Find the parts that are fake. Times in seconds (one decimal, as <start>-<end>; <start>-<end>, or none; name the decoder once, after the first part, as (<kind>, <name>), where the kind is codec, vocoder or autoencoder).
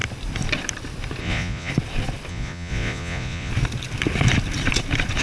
1.2-1.7 (vocoder, Vocos); 2.3-3.5